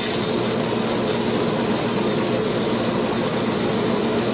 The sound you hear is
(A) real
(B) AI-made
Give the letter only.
A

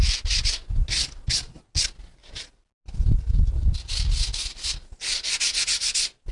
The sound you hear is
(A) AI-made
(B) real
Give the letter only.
B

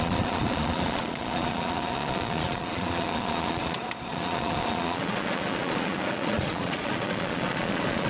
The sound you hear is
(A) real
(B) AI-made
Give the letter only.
B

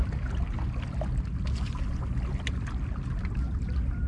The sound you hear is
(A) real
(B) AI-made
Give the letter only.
A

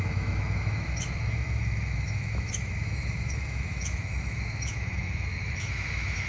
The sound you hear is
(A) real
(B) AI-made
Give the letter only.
B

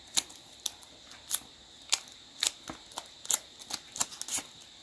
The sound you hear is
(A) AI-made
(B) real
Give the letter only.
B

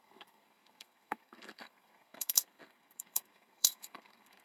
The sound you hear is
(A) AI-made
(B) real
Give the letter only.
A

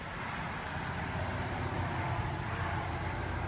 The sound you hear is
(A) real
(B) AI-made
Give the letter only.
B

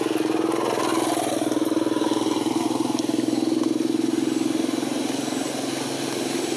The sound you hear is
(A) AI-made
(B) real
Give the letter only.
B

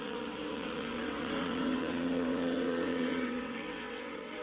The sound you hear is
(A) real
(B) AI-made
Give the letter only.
B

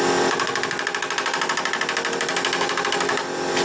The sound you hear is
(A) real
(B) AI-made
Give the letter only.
A